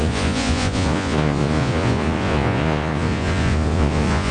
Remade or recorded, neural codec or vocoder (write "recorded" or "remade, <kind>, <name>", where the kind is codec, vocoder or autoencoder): remade, vocoder, Vocos